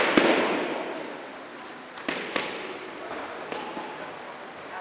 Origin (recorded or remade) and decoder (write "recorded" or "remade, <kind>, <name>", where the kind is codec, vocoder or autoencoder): remade, vocoder, BigVGAN v2